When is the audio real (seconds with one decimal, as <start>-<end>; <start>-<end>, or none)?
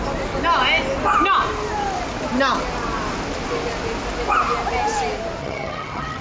0.0-5.4